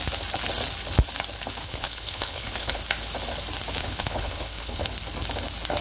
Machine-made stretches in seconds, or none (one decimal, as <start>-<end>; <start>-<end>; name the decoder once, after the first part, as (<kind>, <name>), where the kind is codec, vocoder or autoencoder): 1.6-2.8 (codec, HILCodec); 3.8-4.9